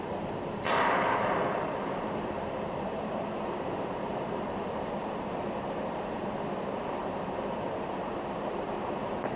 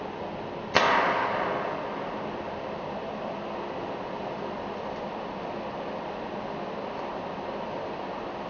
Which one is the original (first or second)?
second